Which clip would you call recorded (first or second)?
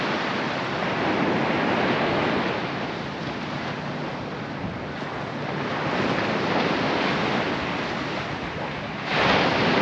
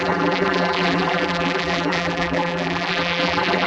first